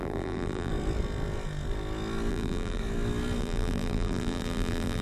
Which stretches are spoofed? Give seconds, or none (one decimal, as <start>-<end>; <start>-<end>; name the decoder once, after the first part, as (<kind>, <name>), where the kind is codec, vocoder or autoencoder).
0.0-0.7 (vocoder, BigVGAN v2); 2.3-2.8; 3.4-5.0